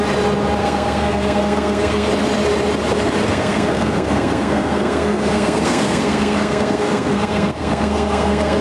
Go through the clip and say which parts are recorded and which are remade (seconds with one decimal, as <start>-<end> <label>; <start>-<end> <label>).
0.0-0.6 recorded; 0.6-2.1 remade; 2.1-3.3 recorded; 3.3-8.6 remade